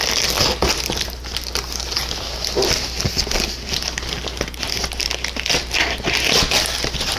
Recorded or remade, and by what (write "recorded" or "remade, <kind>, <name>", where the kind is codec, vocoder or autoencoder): recorded